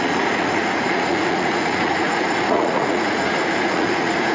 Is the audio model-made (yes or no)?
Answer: yes